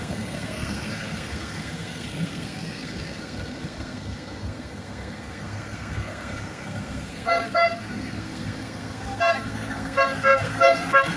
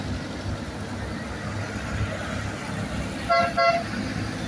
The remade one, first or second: first